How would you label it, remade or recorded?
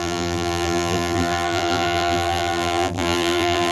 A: remade